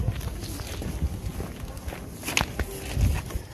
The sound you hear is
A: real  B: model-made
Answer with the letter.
A